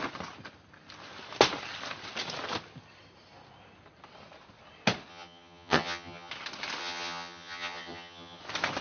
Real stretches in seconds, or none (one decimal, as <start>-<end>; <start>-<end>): 0.0-5.1; 6.3-6.8; 8.4-8.8